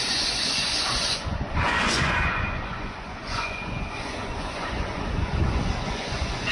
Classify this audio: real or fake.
fake